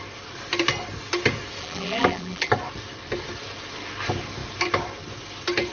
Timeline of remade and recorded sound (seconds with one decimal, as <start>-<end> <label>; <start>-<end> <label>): 0.0-1.6 recorded; 1.6-2.5 remade; 2.5-5.7 recorded

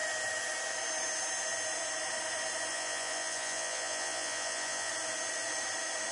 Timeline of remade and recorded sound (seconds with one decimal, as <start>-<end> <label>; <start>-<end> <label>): 0.0-2.7 recorded; 2.7-4.9 remade; 4.9-6.1 recorded

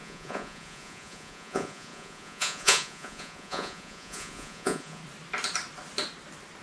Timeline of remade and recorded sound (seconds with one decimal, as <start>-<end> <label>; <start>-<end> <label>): 0.0-5.0 remade; 5.0-6.6 recorded

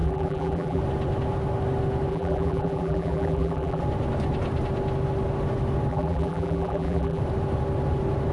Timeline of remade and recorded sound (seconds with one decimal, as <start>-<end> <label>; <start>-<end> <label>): 0.0-0.8 remade; 0.8-2.1 recorded; 2.1-3.8 remade; 3.8-5.9 recorded; 5.9-7.2 remade; 7.2-8.3 recorded

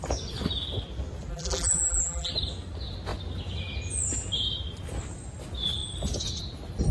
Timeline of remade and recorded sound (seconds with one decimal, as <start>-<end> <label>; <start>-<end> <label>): 0.0-1.3 recorded; 1.3-2.3 remade; 2.3-6.9 recorded

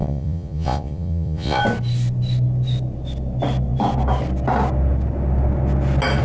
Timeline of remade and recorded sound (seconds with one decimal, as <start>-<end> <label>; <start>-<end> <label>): 0.0-1.6 remade; 1.6-6.2 recorded